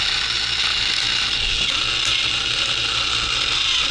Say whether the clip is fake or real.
real